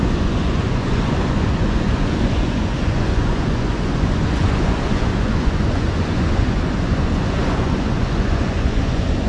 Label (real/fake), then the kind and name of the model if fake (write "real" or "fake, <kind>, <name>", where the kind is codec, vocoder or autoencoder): fake, vocoder, Vocos